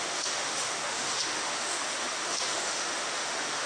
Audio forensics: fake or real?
fake